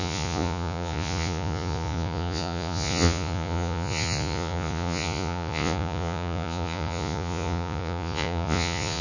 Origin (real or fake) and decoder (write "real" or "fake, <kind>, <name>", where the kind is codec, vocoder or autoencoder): fake, vocoder, Vocos